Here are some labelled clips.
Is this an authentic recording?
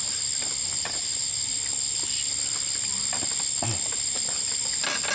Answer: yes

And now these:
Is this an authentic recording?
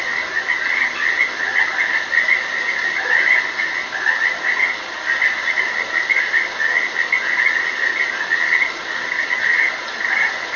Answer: yes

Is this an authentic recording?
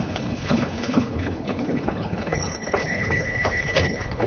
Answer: no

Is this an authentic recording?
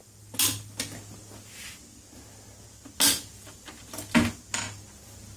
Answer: yes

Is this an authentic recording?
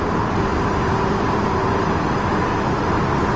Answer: yes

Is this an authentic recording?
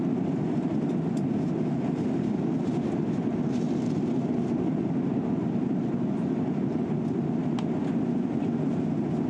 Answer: yes